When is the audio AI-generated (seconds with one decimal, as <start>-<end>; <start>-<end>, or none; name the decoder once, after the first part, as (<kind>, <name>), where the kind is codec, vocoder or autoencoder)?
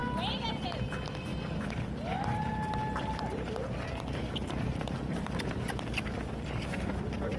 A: none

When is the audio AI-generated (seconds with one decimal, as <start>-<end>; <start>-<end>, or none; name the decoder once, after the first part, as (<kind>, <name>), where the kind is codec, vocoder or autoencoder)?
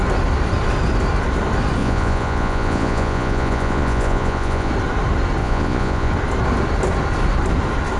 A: 1.8-4.7 (vocoder, Vocos); 5.4-6.1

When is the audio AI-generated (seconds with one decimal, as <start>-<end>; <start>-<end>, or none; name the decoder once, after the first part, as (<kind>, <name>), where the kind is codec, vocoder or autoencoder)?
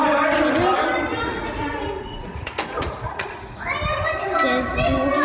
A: 1.1-3.6 (vocoder, Vocos)